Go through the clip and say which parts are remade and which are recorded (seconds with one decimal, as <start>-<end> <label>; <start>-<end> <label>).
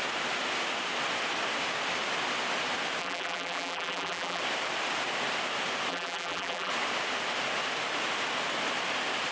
0.0-3.0 recorded; 3.0-4.4 remade; 4.4-5.9 recorded; 5.9-6.7 remade; 6.7-9.3 recorded